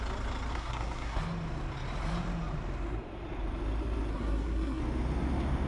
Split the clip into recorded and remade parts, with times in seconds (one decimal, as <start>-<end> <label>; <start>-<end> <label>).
0.0-0.5 recorded; 0.5-1.2 remade; 1.2-4.1 recorded; 4.1-4.8 remade; 4.8-5.7 recorded